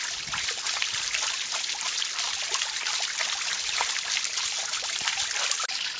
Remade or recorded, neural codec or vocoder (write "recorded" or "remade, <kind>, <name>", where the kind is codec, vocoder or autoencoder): recorded